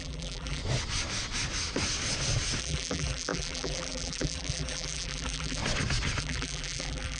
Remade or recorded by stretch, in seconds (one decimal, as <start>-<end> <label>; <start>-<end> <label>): 0.0-0.6 remade; 0.6-2.6 recorded; 2.6-5.6 remade; 5.6-6.2 recorded; 6.2-7.2 remade